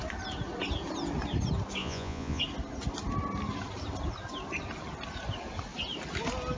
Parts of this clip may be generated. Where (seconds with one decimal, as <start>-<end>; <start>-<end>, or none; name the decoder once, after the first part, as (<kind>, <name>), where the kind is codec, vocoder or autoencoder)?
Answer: 1.8-2.4 (vocoder, Vocos)